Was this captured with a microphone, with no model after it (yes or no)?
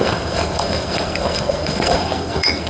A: no